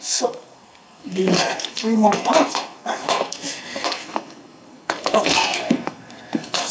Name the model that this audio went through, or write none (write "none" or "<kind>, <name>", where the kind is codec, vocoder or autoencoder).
codec, SNAC